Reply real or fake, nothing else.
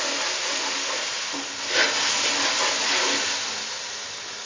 real